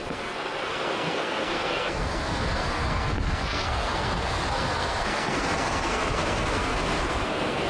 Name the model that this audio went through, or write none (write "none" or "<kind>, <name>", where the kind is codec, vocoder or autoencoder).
codec, SNAC